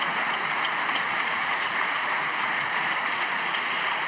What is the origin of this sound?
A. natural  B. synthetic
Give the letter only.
B